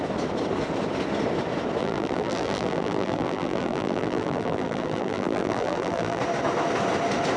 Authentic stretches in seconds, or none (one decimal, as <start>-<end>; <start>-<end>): 0.0-1.8; 6.2-7.4